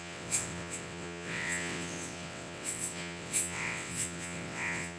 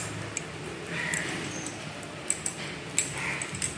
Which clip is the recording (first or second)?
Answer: second